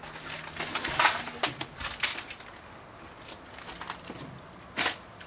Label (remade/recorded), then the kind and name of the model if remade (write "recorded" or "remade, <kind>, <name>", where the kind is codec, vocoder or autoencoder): recorded